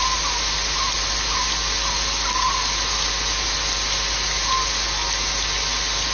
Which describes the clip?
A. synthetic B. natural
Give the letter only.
B